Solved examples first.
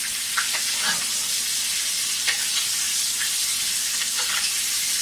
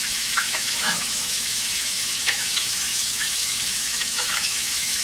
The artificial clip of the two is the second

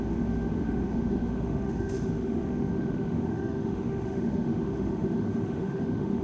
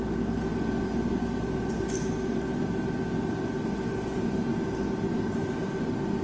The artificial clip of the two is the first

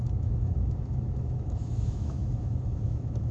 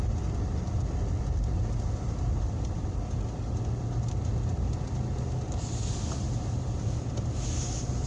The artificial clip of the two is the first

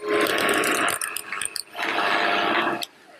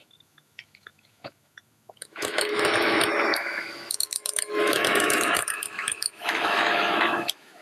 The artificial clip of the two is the second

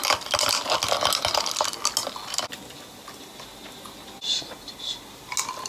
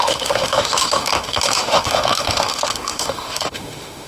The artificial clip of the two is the second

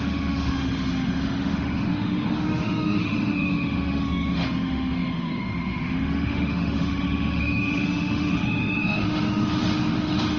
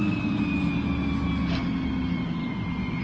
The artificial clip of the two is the first